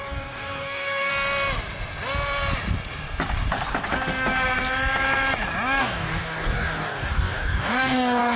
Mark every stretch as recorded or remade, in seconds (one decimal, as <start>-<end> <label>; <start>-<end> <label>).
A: 0.0-1.1 remade; 1.1-5.8 recorded; 5.8-8.4 remade